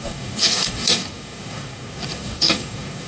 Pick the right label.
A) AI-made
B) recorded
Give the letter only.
A